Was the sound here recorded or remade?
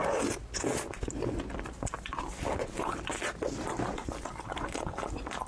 recorded